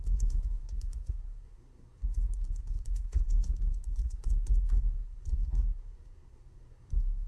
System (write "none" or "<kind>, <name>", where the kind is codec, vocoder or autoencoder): codec, SNAC